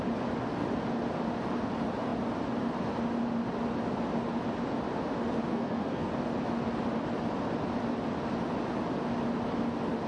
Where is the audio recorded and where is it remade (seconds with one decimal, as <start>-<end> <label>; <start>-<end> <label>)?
0.0-5.5 recorded; 5.5-6.1 remade; 6.1-10.1 recorded